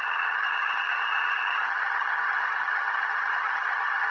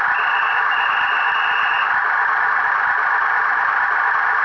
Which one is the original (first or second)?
second